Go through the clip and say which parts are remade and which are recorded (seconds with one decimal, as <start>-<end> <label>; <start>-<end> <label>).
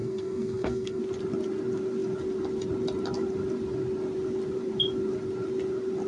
0.0-1.0 remade; 1.0-6.1 recorded